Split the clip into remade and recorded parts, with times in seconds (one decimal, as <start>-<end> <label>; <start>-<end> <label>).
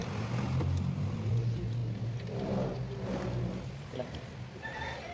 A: 0.0-0.6 recorded; 0.6-1.8 remade; 1.8-3.7 recorded; 3.7-5.1 remade